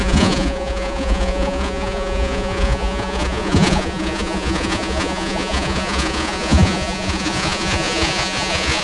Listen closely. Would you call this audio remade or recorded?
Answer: remade